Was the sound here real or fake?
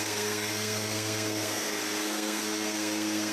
fake